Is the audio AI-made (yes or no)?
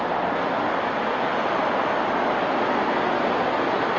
no